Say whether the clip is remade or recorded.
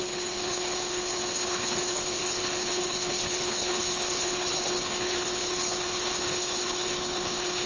remade